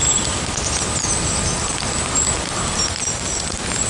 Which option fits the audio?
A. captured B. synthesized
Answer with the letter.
A